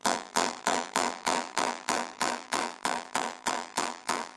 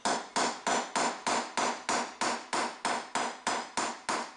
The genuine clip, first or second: second